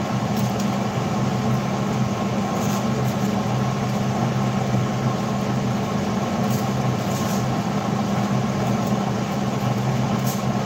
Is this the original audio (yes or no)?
yes